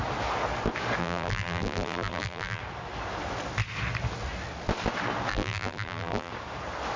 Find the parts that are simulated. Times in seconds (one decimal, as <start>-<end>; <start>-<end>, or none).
1.0-2.6; 5.3-6.3